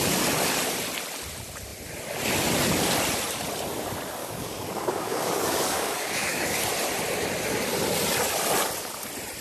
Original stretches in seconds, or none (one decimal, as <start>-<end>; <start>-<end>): 0.0-4.2; 6.6-9.4